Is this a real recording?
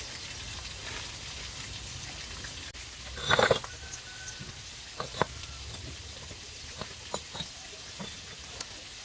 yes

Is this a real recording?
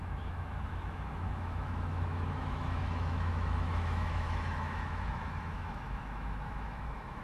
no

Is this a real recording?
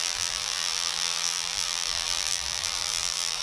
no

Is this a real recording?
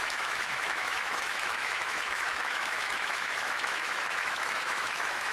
no